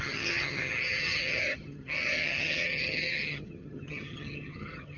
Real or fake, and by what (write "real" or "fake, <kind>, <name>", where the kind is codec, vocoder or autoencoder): fake, vocoder, HiFi-GAN